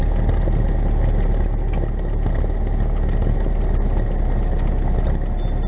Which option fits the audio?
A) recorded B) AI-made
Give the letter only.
A